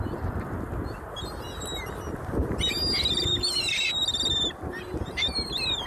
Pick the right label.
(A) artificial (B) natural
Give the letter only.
B